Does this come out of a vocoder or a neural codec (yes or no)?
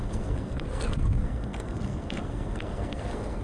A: yes